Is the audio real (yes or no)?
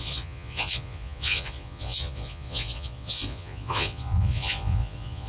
no